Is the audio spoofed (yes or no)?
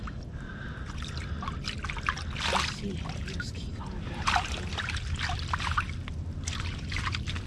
no